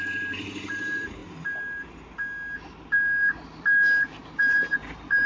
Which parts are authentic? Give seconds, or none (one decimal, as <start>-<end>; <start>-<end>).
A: 1.2-4.4